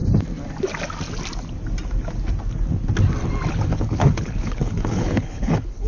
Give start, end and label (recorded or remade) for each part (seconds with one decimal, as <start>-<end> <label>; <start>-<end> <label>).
0.0-3.5 recorded; 3.5-5.9 remade